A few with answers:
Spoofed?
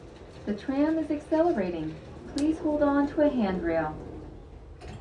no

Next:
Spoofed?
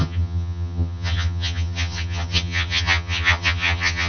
yes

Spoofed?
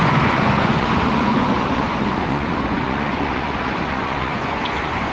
yes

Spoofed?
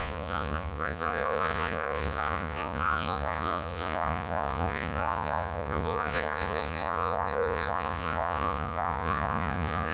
yes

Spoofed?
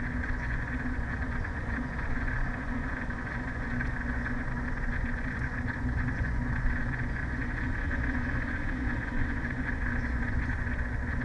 yes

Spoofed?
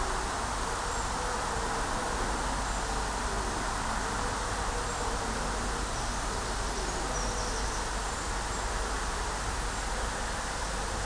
no